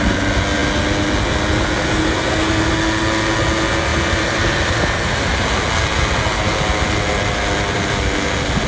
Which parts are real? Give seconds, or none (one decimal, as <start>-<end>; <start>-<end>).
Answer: 0.0-3.9; 4.8-8.7